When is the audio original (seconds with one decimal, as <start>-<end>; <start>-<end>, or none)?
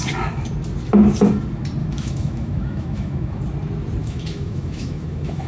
0.0-1.8; 3.4-4.0